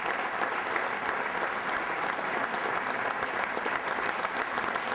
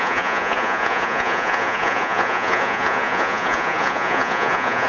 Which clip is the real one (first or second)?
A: first